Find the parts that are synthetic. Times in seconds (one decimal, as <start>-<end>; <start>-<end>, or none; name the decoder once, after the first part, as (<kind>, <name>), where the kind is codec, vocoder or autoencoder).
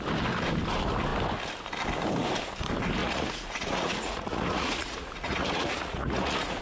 3.0-6.6 (vocoder, Vocos)